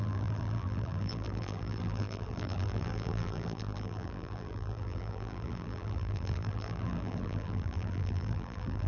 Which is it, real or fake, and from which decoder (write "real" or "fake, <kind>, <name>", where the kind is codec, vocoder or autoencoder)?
fake, vocoder, BigVGAN v2